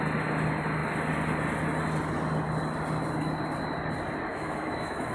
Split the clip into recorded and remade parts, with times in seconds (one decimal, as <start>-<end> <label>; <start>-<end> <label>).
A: 0.0-4.3 recorded; 4.3-5.1 remade